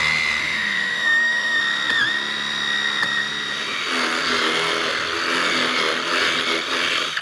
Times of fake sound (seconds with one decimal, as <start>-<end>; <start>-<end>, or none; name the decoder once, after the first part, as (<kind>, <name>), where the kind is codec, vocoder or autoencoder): 0.4-1.6 (autoencoder, DAC-VAE)